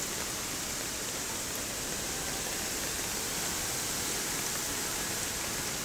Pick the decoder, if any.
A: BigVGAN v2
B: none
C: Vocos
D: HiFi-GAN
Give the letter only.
B